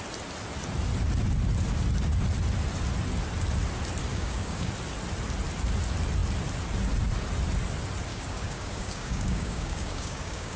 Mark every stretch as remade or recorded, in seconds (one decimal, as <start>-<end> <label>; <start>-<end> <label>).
0.0-4.1 recorded; 4.1-4.7 remade; 4.7-8.1 recorded; 8.1-10.6 remade